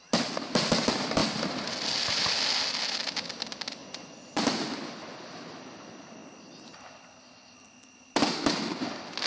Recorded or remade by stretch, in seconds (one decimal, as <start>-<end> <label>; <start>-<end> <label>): 0.0-3.8 recorded; 3.8-4.4 remade; 4.4-9.3 recorded

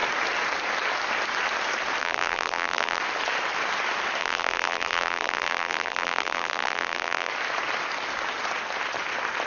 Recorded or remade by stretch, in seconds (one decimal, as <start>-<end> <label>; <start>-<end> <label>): 0.0-2.0 recorded; 2.0-3.0 remade; 3.0-4.2 recorded; 4.2-7.3 remade; 7.3-9.5 recorded

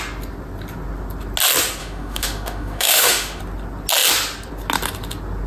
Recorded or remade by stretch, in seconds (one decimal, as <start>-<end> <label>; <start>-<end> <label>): 0.0-1.8 recorded; 1.8-3.4 remade; 3.4-5.5 recorded

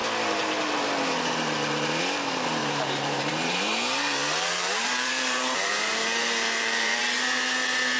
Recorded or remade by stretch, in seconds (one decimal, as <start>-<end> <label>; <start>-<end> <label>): 0.0-2.6 recorded; 2.6-7.0 remade; 7.0-8.0 recorded

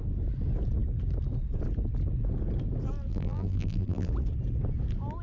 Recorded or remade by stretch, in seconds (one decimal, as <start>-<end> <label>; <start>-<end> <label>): 0.0-3.1 recorded; 3.1-4.1 remade; 4.1-5.2 recorded

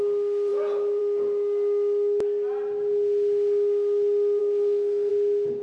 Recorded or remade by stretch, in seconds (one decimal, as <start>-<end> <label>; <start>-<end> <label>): 0.0-4.4 recorded; 4.4-5.1 remade; 5.1-5.6 recorded